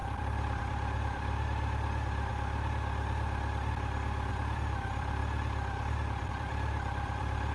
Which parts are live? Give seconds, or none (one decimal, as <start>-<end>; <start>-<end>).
2.3-4.3; 5.2-5.9